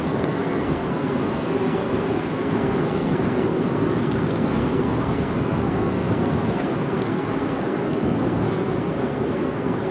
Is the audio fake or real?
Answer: fake